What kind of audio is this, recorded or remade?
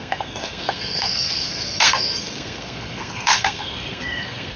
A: remade